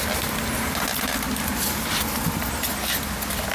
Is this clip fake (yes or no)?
no